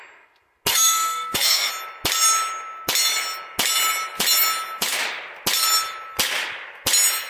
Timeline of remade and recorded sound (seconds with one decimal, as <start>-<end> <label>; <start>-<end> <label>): 0.0-0.7 recorded; 0.7-1.7 remade; 1.7-7.3 recorded